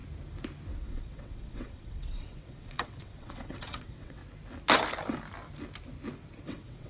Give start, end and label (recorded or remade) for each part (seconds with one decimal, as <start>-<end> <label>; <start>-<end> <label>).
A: 0.0-0.7 recorded; 0.7-4.2 remade; 4.2-6.4 recorded; 6.4-6.9 remade